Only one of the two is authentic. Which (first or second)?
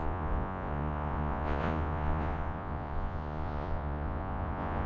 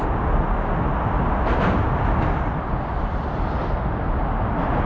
second